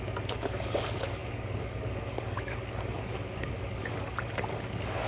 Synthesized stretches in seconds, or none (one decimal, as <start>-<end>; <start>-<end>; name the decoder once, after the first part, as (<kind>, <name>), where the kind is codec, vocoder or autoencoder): 0.0-5.1 (codec, DAC)